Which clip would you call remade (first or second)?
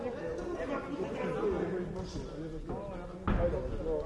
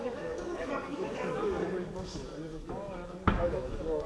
second